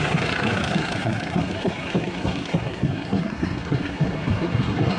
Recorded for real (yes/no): no